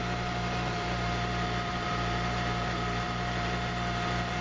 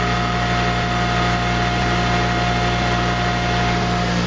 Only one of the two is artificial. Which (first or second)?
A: first